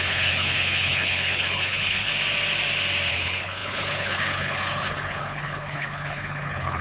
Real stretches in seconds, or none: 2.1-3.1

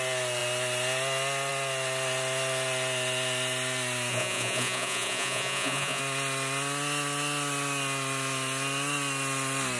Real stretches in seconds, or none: 0.0-4.1; 6.0-9.8

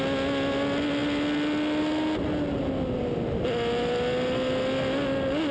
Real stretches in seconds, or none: 0.0-5.5

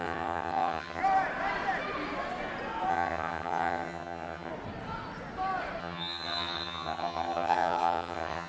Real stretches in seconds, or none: 1.0-2.9; 4.5-5.8

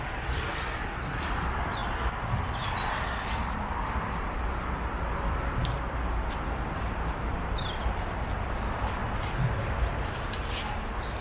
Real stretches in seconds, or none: none

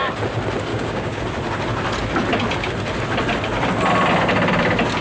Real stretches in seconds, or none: 0.0-0.7; 1.2-5.0